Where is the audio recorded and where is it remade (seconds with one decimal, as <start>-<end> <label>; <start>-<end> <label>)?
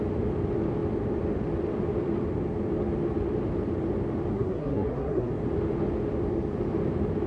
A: 0.0-4.3 recorded; 4.3-5.3 remade; 5.3-7.3 recorded